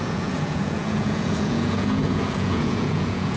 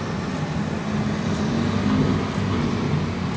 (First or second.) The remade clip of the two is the first